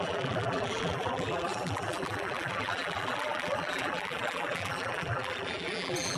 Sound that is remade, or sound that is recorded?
remade